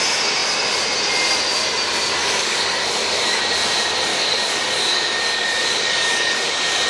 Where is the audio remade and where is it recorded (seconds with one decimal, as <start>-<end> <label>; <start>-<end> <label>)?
0.0-2.2 recorded; 2.2-3.4 remade; 3.4-4.1 recorded; 4.1-6.5 remade; 6.5-6.9 recorded